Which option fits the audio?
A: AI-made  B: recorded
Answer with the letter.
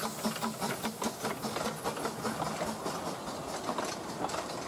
B